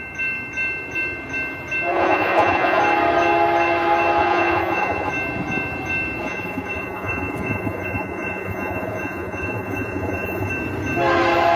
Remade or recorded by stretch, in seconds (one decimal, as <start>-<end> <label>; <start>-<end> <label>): 0.0-1.9 recorded; 1.9-2.8 remade; 2.8-4.2 recorded; 4.2-5.1 remade; 5.1-6.2 recorded; 6.2-10.5 remade; 10.5-11.6 recorded